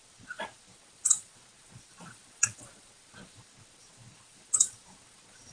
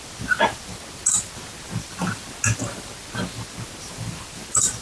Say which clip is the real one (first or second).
second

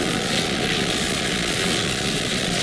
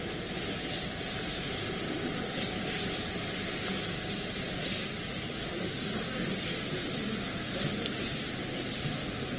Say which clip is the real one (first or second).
second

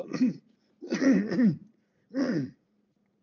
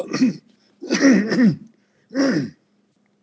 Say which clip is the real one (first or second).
second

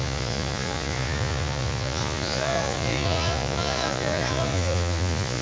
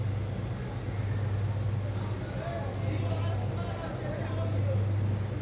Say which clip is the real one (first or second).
second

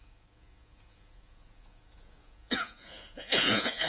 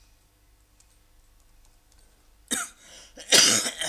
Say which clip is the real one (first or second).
second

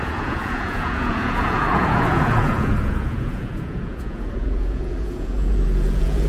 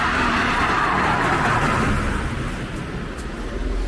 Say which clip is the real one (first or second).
second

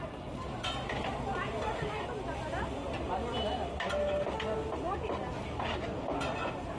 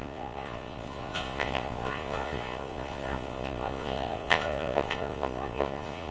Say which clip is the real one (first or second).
first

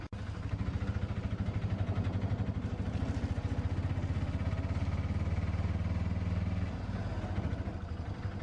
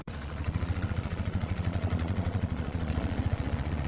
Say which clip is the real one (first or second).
first